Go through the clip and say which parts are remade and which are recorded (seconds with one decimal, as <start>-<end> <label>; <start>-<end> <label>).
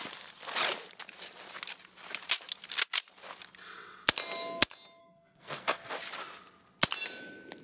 0.0-5.0 recorded; 5.0-5.9 remade; 5.9-7.6 recorded